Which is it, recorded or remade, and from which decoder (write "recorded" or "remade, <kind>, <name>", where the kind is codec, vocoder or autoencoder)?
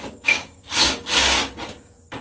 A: remade, codec, DAC